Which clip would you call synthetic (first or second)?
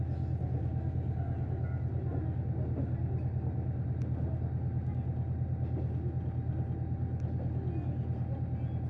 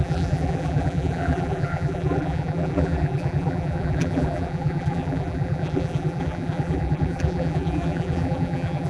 second